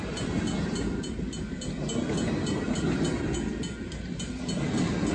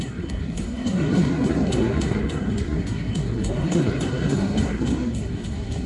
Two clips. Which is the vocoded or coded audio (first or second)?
second